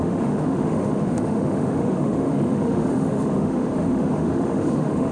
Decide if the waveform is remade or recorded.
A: remade